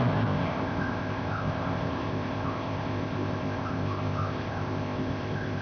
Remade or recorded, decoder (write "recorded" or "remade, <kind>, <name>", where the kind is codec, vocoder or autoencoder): remade, codec, ZipCodec